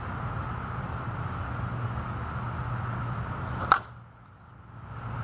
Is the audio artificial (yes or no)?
no